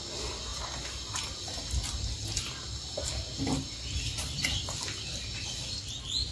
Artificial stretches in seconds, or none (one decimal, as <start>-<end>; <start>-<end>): none